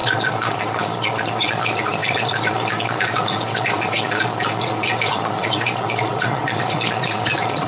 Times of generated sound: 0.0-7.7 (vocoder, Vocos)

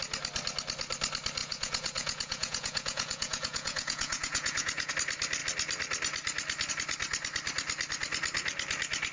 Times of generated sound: 1.4-4.9 (vocoder, Vocos)

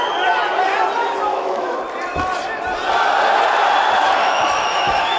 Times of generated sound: 1.3-1.8 (autoencoder, DAC-VAE); 4.2-5.2

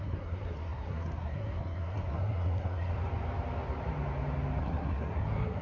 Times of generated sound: 0.0-2.9 (codec, SNAC); 4.6-5.6

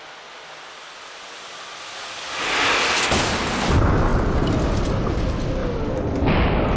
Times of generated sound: none

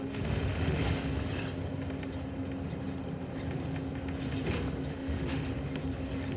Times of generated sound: 0.0-1.1 (autoencoder, DAC-VAE); 4.9-5.5

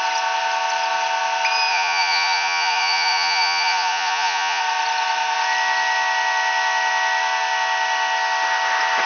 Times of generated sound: 1.7-4.6 (vocoder, Vocos)